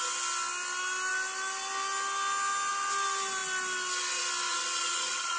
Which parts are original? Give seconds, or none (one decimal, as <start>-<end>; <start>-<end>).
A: 0.0-4.5